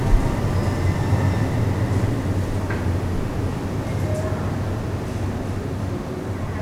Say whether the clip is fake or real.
real